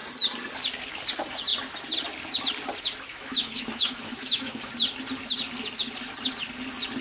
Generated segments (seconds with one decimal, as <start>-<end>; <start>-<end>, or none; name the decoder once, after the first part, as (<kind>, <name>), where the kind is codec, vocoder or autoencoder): 3.1-4.7 (autoencoder, DAC-VAE)

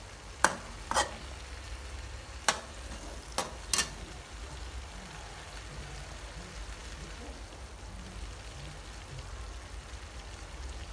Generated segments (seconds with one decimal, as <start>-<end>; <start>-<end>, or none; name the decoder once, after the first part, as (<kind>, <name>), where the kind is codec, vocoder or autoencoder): none

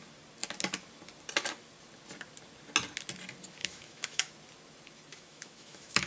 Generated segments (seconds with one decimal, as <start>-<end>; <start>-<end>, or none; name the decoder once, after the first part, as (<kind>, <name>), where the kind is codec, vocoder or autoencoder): 3.6-4.3 (autoencoder, DAC-VAE); 5.1-6.1